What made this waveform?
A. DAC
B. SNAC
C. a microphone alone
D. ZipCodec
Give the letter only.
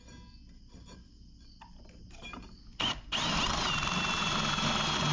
C